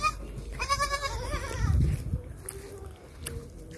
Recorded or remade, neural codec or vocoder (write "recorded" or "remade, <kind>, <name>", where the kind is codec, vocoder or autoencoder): recorded